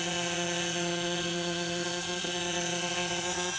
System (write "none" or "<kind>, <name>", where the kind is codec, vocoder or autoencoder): vocoder, Vocos